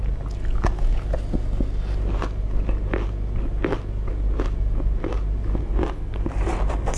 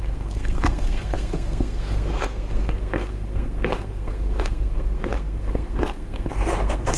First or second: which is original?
first